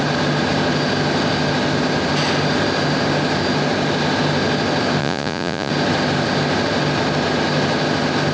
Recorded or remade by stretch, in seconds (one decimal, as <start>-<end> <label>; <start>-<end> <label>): 0.0-5.0 recorded; 5.0-5.7 remade; 5.7-8.3 recorded